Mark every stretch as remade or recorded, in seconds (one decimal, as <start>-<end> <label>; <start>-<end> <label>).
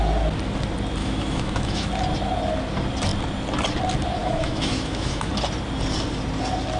0.0-1.0 recorded; 1.0-1.9 remade; 1.9-4.2 recorded; 4.2-5.3 remade; 5.3-6.8 recorded